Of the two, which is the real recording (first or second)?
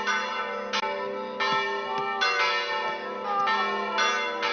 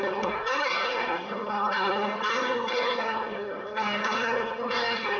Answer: first